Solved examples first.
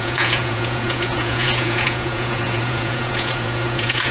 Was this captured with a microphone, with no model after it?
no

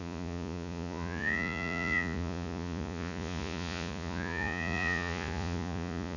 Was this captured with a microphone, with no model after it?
no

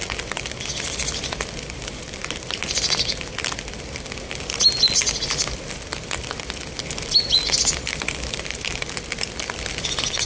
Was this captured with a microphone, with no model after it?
yes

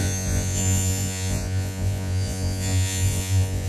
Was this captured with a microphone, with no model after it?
no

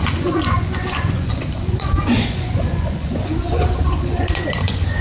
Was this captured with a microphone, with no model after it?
no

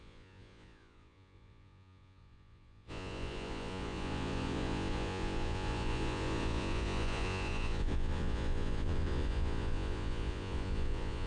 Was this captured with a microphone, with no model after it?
no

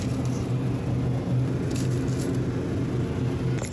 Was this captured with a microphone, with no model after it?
yes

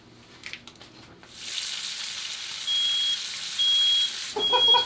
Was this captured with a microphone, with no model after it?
yes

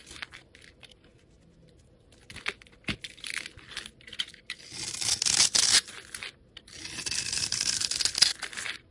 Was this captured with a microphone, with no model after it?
yes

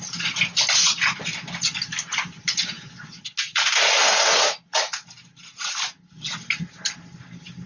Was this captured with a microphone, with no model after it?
yes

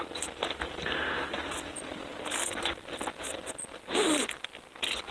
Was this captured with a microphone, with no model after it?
yes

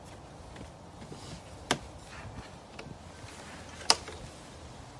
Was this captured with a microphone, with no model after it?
yes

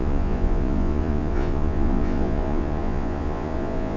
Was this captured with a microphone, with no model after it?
no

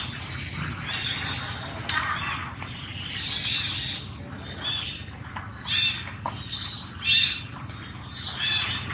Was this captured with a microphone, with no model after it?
yes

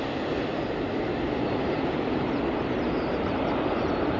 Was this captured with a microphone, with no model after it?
yes